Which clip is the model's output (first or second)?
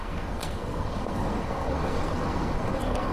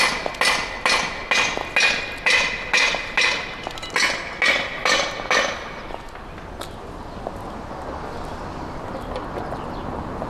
first